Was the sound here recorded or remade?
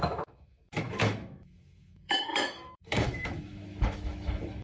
remade